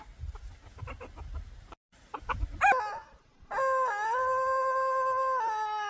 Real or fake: real